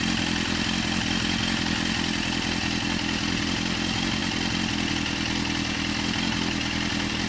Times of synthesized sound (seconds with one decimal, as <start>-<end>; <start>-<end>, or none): none